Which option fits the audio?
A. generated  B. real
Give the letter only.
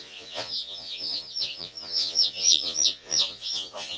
A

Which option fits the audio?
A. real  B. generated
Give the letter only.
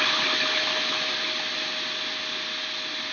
A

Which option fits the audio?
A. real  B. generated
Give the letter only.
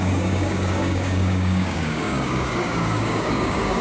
B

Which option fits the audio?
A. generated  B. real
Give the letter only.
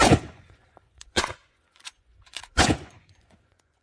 A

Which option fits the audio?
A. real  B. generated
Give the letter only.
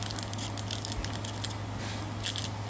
A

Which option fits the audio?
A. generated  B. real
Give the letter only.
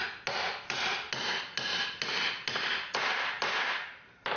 B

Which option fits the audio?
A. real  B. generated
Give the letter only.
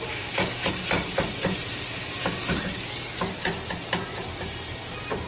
A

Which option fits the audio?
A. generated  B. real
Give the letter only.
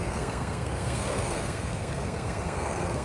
A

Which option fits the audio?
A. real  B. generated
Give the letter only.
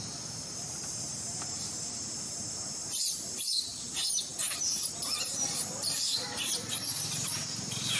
B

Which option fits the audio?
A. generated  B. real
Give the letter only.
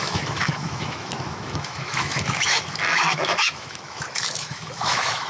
A